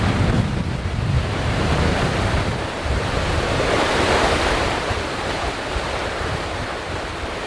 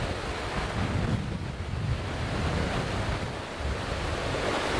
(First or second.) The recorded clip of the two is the second